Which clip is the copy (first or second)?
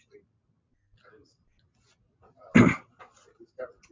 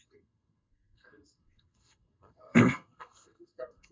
second